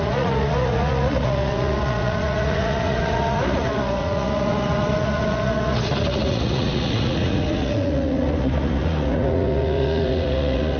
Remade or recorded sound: remade